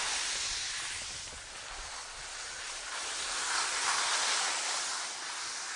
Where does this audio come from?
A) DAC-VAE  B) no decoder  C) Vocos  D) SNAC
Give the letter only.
B